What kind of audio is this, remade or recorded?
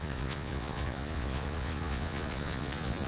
remade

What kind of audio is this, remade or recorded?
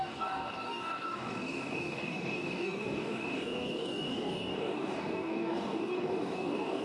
remade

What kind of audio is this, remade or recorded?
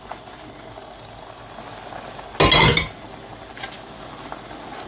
recorded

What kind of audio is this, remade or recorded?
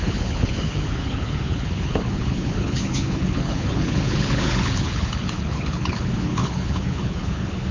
remade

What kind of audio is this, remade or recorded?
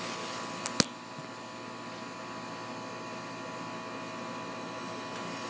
recorded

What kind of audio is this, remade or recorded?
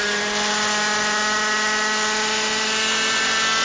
recorded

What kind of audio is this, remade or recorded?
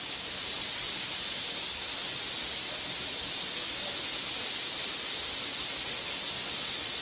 recorded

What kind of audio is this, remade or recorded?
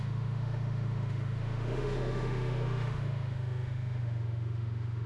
remade